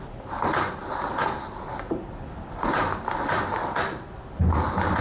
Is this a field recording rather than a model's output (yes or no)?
yes